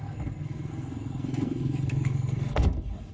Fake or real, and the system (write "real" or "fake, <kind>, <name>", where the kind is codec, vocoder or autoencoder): fake, codec, SNAC